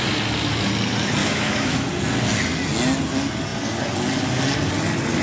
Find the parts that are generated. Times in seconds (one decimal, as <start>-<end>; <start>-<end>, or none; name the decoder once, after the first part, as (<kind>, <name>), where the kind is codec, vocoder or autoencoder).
1.2-1.9 (autoencoder, DAC-VAE)